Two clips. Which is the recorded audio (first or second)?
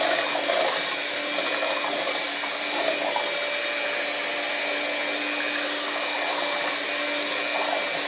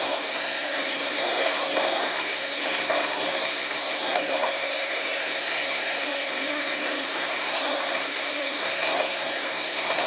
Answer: first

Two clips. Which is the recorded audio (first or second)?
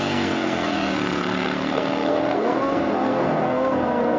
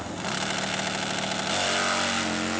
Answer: second